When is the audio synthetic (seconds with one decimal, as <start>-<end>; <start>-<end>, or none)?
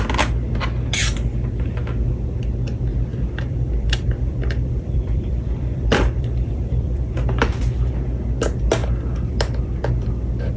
3.1-7.9